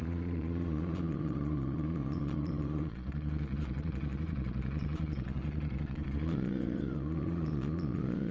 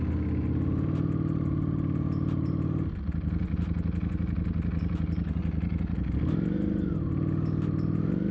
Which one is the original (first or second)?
second